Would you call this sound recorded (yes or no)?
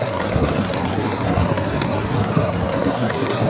no